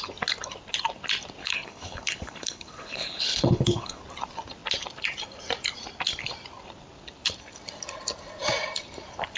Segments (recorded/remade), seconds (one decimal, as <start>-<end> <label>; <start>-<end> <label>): 0.0-1.4 recorded; 1.4-4.0 remade; 4.0-9.4 recorded